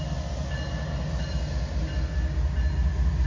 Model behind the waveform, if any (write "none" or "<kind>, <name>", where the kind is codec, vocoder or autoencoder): none